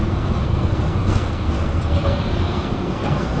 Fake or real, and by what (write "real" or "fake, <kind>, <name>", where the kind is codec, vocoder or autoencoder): fake, codec, SNAC